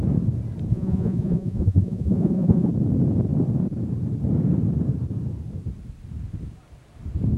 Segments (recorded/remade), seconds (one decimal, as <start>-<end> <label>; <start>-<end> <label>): 0.0-0.7 recorded; 0.7-2.7 remade; 2.7-7.4 recorded